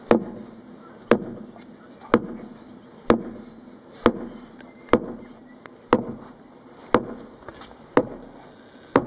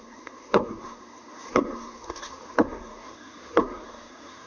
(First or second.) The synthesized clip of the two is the second